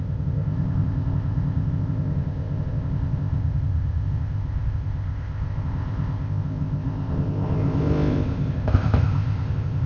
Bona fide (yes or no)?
no